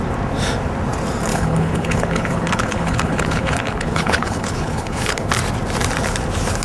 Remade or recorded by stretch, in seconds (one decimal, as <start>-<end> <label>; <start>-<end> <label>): 0.0-1.3 recorded; 1.3-5.3 remade; 5.3-6.6 recorded